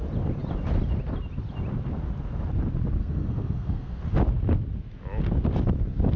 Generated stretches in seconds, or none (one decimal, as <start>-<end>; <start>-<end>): 3.0-4.0